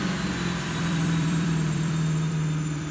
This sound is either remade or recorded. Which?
remade